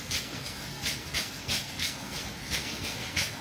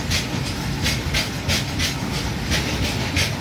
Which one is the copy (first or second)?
first